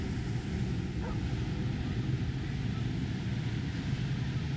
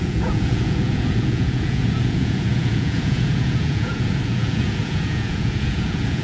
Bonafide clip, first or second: first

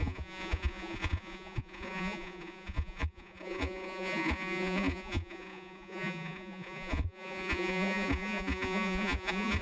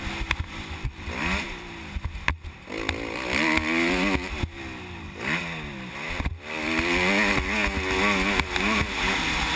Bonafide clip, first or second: second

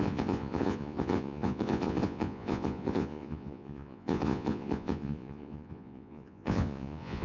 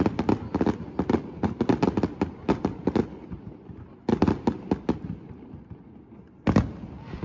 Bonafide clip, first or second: second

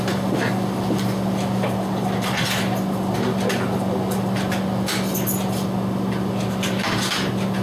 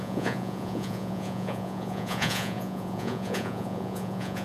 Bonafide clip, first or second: first